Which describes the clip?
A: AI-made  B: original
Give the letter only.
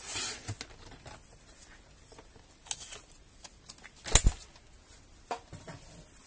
B